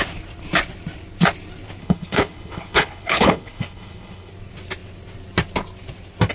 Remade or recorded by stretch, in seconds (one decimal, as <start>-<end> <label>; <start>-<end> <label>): 0.0-1.8 recorded; 1.8-4.3 remade; 4.3-6.3 recorded